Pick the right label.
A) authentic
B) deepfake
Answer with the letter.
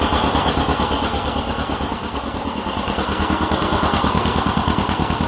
B